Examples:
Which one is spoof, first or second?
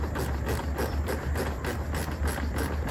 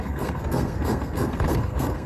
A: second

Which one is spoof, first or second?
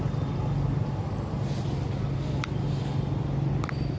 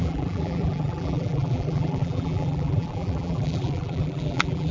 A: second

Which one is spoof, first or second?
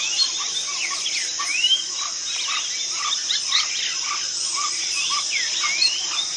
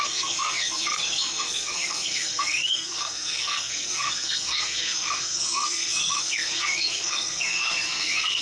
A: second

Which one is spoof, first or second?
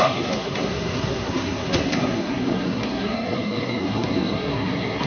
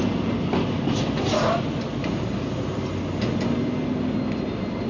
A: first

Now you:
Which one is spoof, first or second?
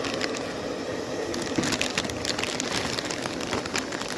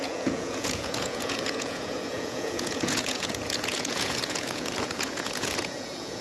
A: second